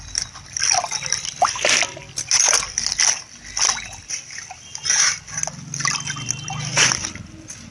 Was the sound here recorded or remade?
recorded